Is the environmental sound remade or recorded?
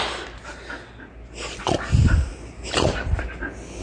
recorded